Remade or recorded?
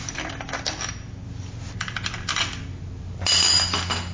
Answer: recorded